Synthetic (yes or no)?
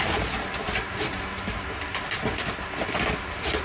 no